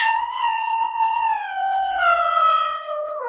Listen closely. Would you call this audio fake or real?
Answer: fake